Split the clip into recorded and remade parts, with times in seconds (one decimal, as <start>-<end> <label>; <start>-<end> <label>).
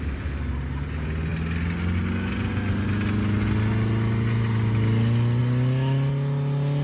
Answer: 0.0-6.8 recorded